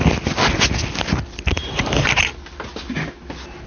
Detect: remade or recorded recorded